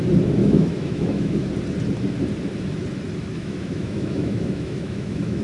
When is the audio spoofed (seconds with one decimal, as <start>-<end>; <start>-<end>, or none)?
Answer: 0.4-1.5; 3.3-5.4